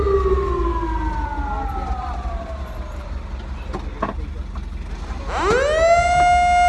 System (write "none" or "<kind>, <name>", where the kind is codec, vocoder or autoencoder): none